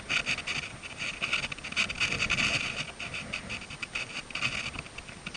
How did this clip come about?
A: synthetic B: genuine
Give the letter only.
B